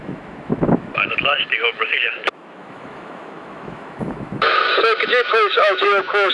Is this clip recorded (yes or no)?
no